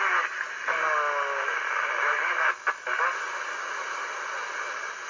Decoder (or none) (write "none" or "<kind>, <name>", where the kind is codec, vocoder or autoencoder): none